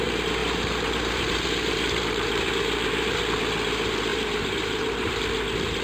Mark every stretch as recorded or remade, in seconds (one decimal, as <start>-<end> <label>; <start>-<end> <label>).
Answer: 0.0-0.4 recorded; 0.4-3.2 remade; 3.2-4.1 recorded; 4.1-5.1 remade; 5.1-5.8 recorded